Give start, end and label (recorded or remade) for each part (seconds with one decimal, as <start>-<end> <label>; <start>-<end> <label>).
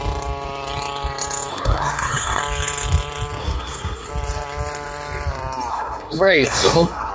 0.0-1.5 recorded; 1.5-2.4 remade; 2.4-3.4 recorded; 3.4-4.1 remade; 4.1-5.7 recorded; 5.7-7.1 remade